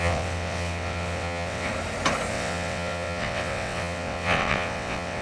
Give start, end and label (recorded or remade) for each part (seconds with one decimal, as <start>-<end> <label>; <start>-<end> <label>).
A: 0.0-1.7 remade; 1.7-2.3 recorded; 2.3-5.2 remade